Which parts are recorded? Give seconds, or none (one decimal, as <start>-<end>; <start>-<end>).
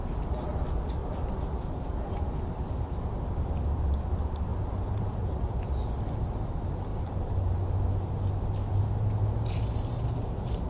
0.0-1.0; 3.9-4.5; 5.5-6.9; 7.4-10.7